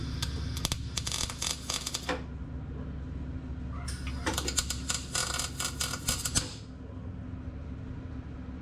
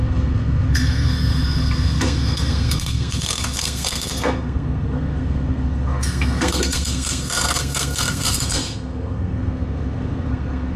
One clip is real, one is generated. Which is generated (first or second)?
second